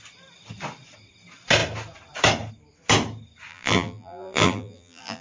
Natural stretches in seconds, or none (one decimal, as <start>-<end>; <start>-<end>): 0.0-3.5